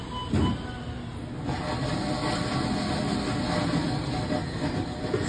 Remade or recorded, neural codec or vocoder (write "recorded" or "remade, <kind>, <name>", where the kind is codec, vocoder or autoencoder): recorded